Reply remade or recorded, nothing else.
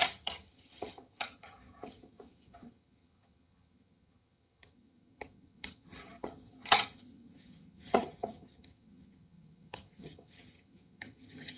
remade